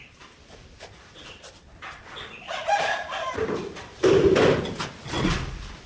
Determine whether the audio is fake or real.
real